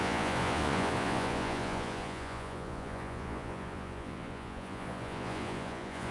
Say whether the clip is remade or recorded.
remade